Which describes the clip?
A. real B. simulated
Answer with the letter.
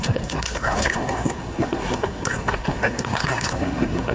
B